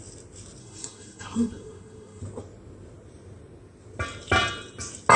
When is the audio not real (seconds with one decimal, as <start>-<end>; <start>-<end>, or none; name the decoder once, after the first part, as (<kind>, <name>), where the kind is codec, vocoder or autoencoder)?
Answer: 0.6-2.2 (codec, SNAC)